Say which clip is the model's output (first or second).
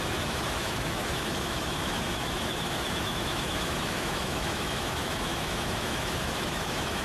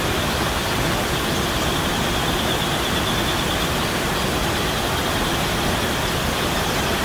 first